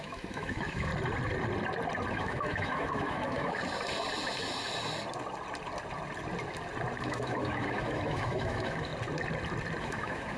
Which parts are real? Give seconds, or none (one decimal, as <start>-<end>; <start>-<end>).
0.9-2.1; 3.6-7.0; 8.9-9.8